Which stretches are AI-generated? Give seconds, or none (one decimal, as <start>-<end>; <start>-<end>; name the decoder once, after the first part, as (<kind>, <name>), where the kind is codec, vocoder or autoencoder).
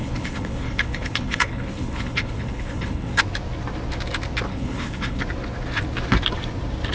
0.0-3.2 (codec, HILCodec); 4.5-5.2